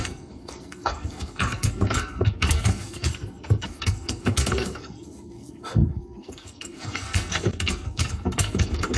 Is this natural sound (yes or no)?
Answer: no